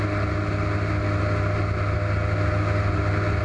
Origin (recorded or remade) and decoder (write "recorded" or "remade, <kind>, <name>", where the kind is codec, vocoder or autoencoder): recorded